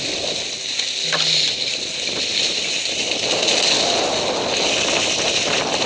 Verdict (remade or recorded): recorded